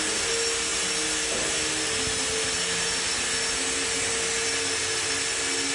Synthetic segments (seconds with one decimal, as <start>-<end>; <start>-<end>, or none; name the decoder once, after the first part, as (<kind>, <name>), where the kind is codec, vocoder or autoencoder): none